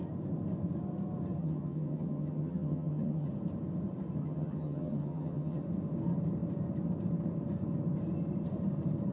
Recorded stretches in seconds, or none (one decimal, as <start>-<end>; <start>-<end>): 0.0-1.4; 3.3-4.2; 5.6-9.1